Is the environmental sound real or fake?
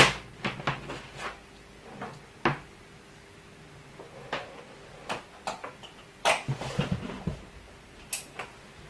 real